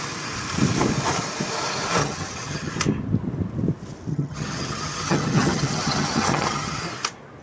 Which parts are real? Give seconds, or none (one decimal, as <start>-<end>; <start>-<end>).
0.0-2.0; 2.7-4.1; 6.8-7.4